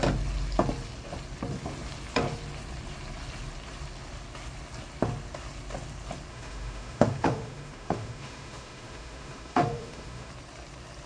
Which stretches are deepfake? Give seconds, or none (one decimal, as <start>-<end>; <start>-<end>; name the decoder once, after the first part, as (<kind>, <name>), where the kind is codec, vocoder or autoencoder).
6.3-10.3 (autoencoder, DAC-VAE)